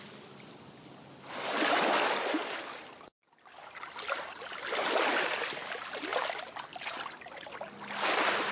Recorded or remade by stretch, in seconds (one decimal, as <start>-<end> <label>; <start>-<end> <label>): 0.0-8.5 recorded